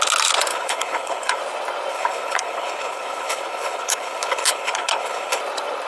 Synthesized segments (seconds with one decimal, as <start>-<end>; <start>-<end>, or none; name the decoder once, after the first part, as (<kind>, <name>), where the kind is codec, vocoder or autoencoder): 0.5-1.4 (codec, HILCodec); 1.9-5.4